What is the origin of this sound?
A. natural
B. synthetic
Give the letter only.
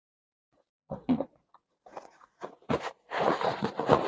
B